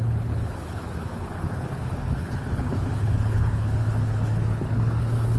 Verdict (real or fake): fake